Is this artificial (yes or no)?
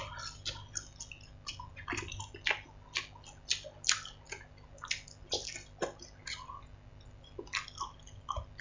no